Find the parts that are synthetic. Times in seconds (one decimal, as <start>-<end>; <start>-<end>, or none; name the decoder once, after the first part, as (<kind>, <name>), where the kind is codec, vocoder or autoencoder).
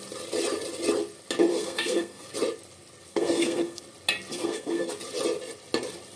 1.5-2.3 (codec, SNAC); 3.1-3.8; 4.3-4.9